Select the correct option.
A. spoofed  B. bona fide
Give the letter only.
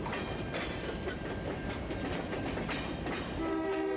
B